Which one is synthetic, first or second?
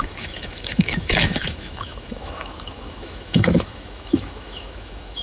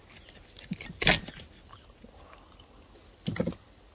first